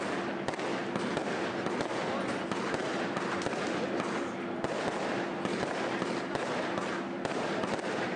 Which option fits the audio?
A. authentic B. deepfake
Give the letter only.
A